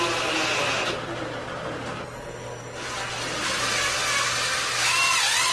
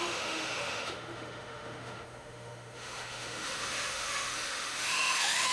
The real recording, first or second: first